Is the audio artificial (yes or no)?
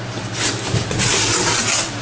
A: no